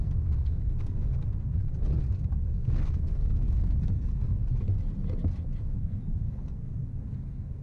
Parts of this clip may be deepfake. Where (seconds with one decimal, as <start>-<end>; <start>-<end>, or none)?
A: 0.0-1.6; 2.1-4.4; 5.6-7.6